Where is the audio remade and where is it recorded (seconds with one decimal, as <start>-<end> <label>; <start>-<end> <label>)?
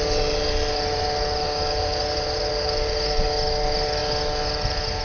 0.0-5.0 recorded